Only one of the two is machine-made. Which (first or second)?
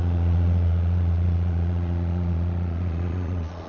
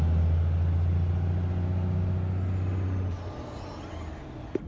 first